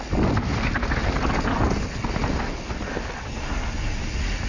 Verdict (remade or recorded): recorded